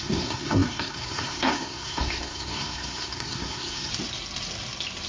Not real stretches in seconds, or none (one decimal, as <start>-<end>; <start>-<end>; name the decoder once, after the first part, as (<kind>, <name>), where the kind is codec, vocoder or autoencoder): 0.0-3.9 (codec, SNAC)